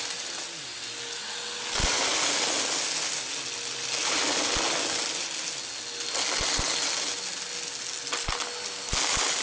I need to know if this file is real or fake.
real